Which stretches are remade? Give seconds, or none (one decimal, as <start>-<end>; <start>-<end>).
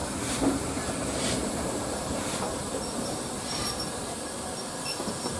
0.0-0.7; 1.4-4.6